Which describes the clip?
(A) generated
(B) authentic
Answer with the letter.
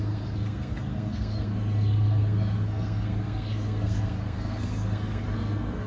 A